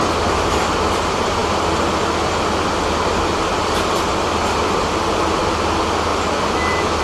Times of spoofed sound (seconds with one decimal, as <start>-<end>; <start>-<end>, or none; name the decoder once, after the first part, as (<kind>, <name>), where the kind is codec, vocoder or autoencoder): none